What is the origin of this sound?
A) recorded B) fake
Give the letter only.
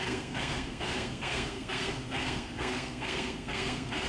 B